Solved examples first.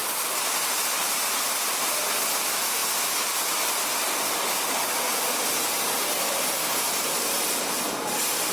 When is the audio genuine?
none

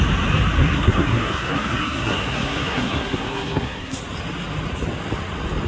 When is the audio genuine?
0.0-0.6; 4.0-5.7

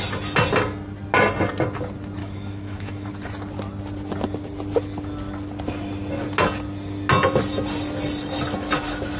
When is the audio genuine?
0.0-2.2; 3.1-9.2

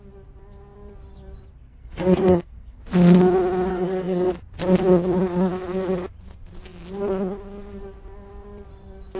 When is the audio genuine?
0.0-1.7; 2.8-3.7; 4.3-9.2